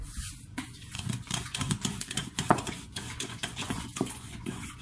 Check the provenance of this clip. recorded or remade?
remade